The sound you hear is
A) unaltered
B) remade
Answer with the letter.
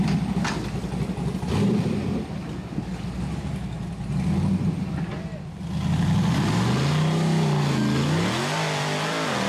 A